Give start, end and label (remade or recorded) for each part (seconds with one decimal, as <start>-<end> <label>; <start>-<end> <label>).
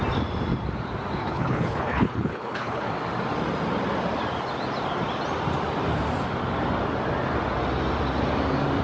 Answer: 0.0-1.2 recorded; 1.2-2.9 remade; 2.9-8.8 recorded